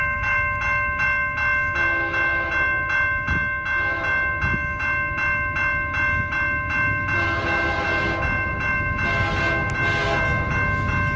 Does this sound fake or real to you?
real